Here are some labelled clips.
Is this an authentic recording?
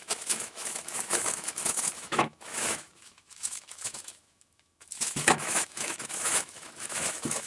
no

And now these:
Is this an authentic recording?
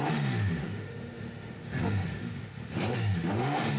no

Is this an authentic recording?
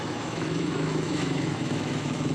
no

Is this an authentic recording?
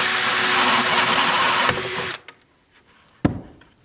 yes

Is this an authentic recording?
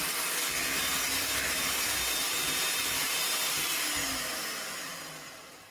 yes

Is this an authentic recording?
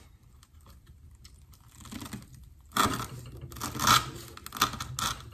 yes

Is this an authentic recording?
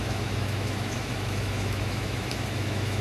no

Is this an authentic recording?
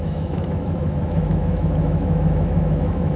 no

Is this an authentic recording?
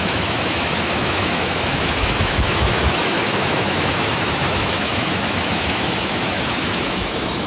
no